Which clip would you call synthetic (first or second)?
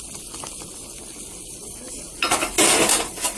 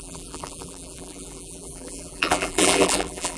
second